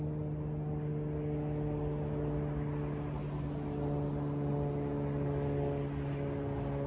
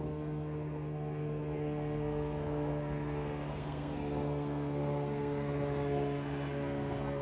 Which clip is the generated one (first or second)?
second